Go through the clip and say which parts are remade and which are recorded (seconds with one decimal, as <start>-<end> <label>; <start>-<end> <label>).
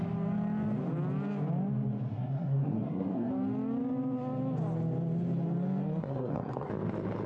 0.0-2.1 recorded; 2.1-3.3 remade; 3.3-6.0 recorded; 6.0-6.7 remade; 6.7-7.3 recorded